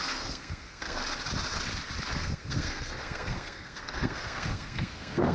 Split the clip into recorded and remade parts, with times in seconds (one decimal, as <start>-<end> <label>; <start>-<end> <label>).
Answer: 0.0-1.0 remade; 1.0-2.1 recorded; 2.1-5.3 remade